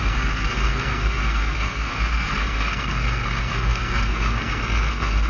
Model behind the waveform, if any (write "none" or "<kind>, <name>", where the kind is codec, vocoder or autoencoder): codec, SNAC